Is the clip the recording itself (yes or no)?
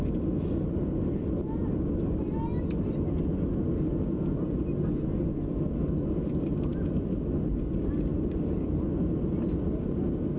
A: yes